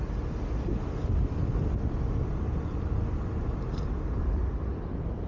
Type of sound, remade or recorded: recorded